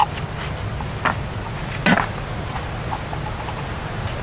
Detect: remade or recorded recorded